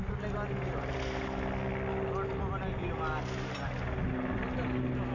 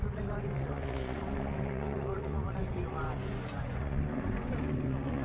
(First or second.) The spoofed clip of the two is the second